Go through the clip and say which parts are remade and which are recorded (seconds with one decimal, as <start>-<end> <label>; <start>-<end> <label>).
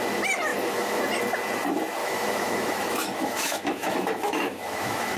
0.0-0.5 recorded; 0.5-1.0 remade; 1.0-2.0 recorded; 2.0-5.2 remade